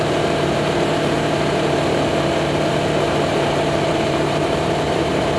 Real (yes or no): no